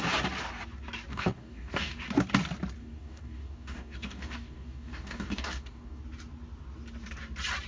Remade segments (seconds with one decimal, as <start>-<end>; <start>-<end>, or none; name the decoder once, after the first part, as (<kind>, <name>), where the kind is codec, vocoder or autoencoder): 1.1-2.0 (codec, DAC); 2.8-6.0

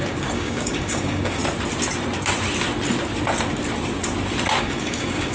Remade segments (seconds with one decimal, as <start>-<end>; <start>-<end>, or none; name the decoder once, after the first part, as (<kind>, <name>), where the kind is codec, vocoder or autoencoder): 0.0-1.4 (codec, DAC); 4.6-5.3